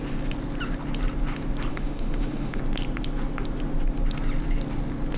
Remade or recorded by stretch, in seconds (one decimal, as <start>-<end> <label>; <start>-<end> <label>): 0.0-1.7 recorded; 1.7-2.6 remade; 2.6-5.2 recorded